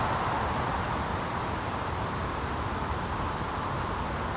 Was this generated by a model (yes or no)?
no